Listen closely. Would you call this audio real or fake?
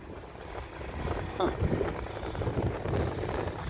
real